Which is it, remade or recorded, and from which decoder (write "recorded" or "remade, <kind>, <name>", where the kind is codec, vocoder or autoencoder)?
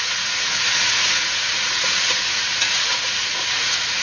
remade, vocoder, Vocos